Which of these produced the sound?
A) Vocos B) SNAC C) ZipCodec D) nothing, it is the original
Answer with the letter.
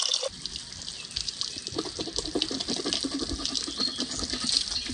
D